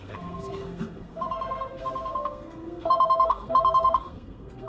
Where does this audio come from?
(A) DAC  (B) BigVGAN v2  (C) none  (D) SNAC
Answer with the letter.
D